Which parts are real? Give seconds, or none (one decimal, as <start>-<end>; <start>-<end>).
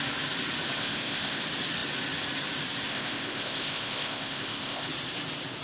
0.0-0.8; 1.4-2.9; 4.9-5.6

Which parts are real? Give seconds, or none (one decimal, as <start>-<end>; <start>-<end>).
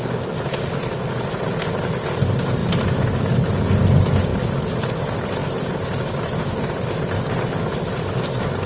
0.0-5.4; 6.4-8.7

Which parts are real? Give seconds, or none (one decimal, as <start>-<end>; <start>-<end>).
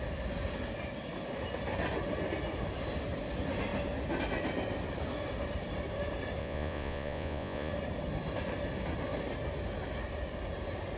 0.0-6.4; 7.7-11.0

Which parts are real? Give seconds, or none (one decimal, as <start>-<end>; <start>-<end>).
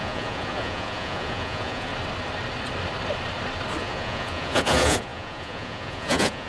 1.9-3.8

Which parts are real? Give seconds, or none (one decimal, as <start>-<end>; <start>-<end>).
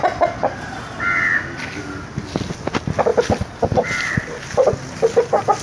0.0-5.6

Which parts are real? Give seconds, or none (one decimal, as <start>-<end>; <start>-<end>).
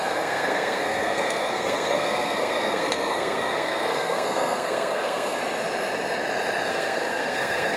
5.4-6.7